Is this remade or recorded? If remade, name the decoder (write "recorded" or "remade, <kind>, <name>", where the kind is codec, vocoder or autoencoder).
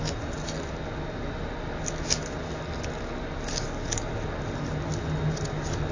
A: recorded